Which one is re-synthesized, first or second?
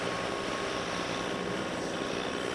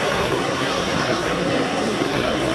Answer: second